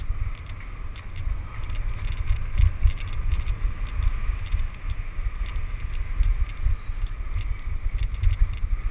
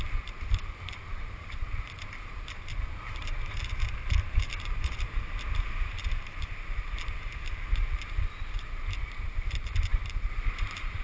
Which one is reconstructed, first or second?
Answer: second